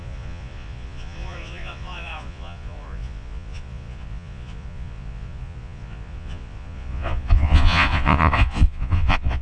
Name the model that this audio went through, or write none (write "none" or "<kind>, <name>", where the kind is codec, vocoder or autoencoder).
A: vocoder, Vocos